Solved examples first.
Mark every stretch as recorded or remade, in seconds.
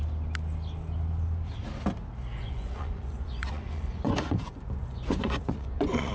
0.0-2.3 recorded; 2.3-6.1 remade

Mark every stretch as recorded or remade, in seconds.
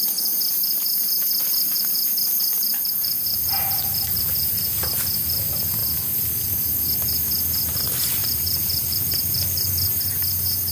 0.0-1.5 recorded; 1.5-4.5 remade; 4.5-8.2 recorded; 8.2-9.7 remade; 9.7-10.7 recorded